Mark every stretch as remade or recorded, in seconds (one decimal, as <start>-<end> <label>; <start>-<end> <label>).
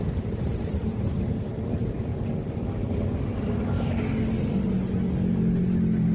0.0-2.1 remade; 2.1-5.3 recorded; 5.3-6.1 remade